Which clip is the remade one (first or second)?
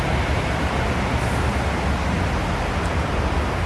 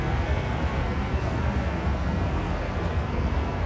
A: second